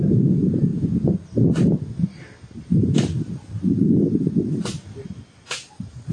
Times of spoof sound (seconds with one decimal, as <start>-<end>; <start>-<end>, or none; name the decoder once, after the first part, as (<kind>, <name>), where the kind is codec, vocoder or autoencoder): none